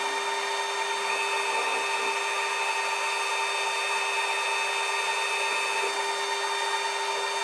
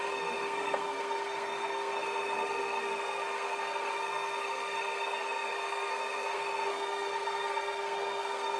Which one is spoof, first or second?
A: second